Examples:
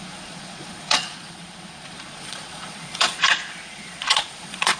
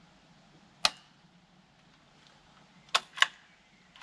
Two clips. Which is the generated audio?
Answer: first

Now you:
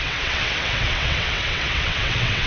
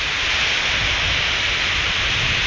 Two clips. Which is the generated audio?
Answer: first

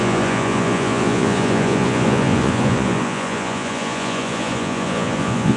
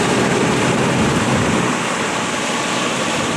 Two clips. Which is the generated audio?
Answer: first